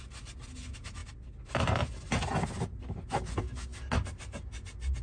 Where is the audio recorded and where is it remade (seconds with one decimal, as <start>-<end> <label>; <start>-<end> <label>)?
0.0-5.0 recorded